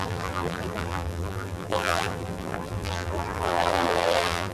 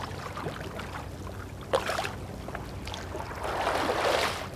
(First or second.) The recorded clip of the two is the second